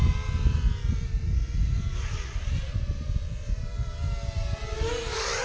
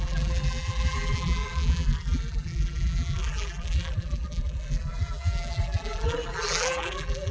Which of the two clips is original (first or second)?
first